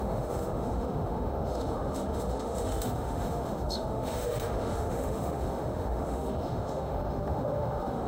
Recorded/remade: remade